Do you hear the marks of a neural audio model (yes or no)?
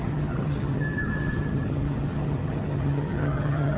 yes